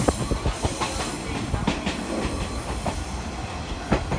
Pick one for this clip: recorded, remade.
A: recorded